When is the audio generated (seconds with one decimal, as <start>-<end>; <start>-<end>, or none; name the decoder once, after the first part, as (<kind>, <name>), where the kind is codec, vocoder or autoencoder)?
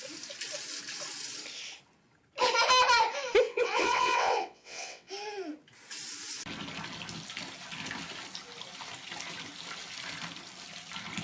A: 3.5-5.1 (vocoder, WaveNeXt)